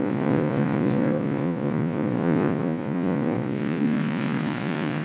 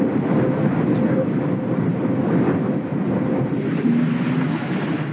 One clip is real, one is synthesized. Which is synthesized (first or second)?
first